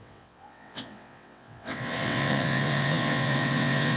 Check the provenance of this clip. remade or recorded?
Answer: remade